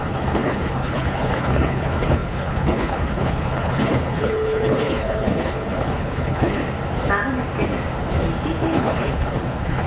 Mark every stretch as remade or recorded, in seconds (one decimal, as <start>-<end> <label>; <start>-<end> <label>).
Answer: 0.0-6.6 remade; 6.6-8.6 recorded; 8.6-9.9 remade